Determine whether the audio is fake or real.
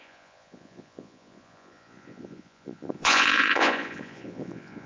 fake